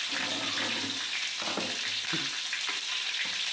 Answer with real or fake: real